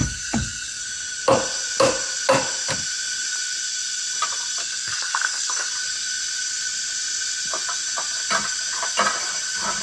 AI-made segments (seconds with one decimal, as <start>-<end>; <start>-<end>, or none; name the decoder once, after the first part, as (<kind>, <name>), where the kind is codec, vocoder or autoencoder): 0.0-0.8 (codec, SNAC); 4.6-5.7